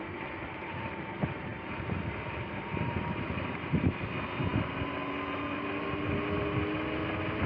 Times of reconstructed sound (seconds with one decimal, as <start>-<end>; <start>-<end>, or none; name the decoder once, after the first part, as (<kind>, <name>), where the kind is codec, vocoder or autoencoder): 1.5-4.1 (vocoder, BigVGAN v2)